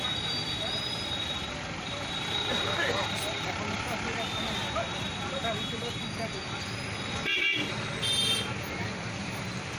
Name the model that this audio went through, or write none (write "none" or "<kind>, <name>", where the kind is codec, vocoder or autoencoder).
none